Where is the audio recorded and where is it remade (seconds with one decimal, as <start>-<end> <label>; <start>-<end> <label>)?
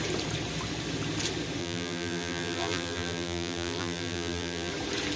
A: 0.0-1.6 recorded; 1.6-4.7 remade; 4.7-5.2 recorded